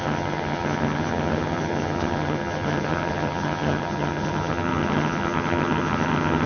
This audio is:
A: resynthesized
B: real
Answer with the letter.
A